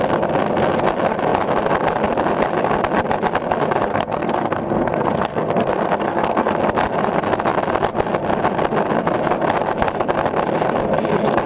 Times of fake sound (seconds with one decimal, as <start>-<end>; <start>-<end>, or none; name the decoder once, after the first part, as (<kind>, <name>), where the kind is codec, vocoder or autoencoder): 3.9-6.5 (codec, SNAC)